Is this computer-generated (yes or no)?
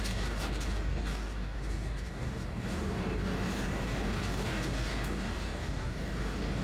yes